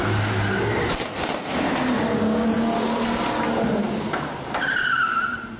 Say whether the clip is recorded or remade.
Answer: recorded